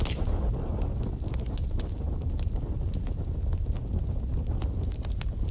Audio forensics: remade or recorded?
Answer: recorded